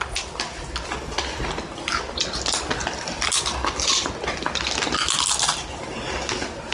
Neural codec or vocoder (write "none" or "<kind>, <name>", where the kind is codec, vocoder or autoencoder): none